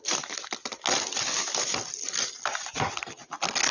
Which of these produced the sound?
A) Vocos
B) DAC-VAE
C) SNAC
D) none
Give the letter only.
D